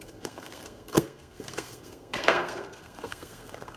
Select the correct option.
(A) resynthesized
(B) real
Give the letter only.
A